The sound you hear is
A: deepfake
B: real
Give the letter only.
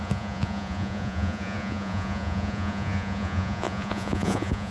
A